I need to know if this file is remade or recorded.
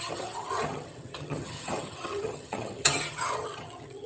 remade